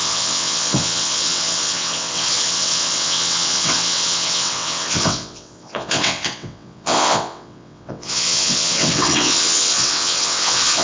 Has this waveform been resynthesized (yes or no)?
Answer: yes